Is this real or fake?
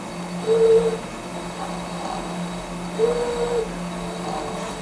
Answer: real